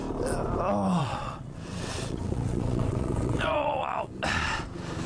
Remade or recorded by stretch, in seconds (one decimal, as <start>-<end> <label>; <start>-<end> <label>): 0.0-1.0 recorded; 1.0-4.1 remade; 4.1-5.1 recorded